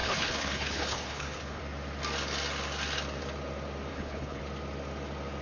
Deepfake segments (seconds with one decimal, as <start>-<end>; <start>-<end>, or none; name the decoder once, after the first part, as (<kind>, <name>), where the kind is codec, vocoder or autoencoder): 0.0-1.6 (codec, HILCodec); 3.9-4.4